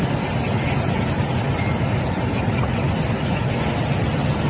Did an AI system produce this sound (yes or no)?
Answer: no